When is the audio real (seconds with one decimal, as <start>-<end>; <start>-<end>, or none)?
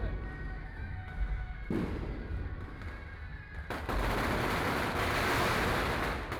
0.0-6.4